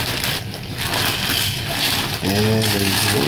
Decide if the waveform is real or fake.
real